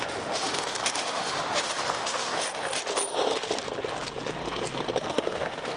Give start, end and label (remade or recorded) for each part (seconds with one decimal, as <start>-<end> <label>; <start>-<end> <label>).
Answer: 0.0-2.8 remade; 2.8-5.1 recorded; 5.1-5.8 remade